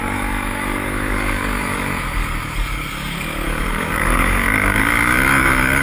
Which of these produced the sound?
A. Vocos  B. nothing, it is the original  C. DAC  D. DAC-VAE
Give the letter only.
C